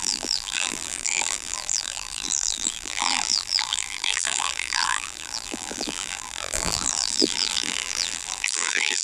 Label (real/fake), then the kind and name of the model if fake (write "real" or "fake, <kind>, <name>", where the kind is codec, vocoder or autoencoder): fake, vocoder, BigVGAN v2